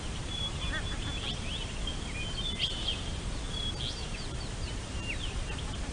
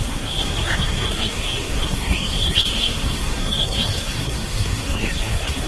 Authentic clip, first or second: first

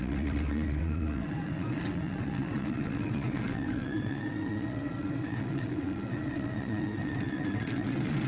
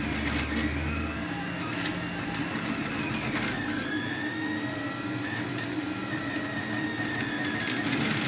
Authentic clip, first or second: second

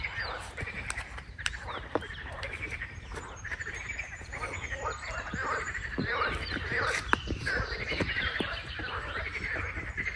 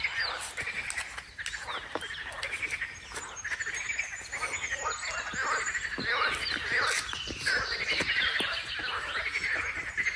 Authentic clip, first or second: second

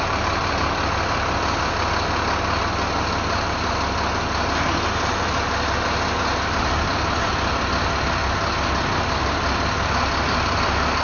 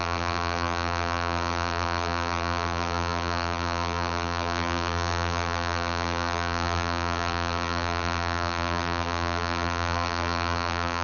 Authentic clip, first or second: first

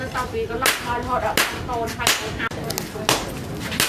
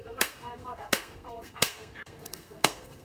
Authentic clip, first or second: first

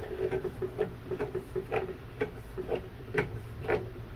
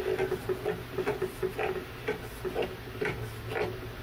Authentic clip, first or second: second